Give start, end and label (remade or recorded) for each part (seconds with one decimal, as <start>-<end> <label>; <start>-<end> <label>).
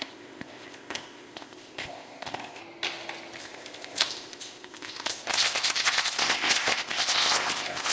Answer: 0.0-2.6 remade; 2.6-3.4 recorded; 3.4-7.9 remade